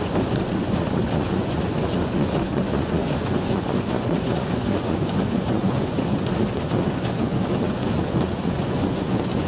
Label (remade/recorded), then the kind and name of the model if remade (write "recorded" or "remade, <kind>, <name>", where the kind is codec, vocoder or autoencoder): remade, vocoder, Vocos